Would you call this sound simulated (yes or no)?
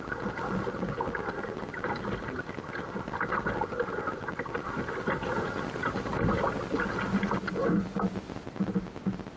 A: no